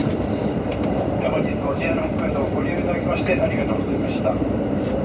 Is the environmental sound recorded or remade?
remade